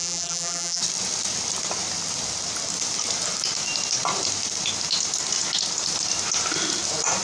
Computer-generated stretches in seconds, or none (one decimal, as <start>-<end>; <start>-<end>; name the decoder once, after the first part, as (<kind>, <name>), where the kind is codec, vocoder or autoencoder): 0.0-0.8 (vocoder, BigVGAN v2)